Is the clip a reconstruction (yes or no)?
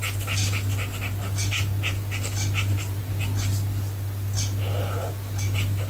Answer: no